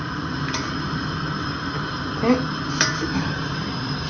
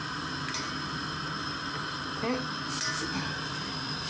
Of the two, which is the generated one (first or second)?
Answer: first